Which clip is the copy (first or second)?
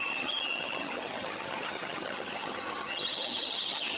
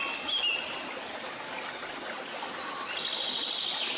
first